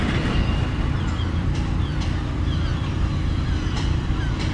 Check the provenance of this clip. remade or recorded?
remade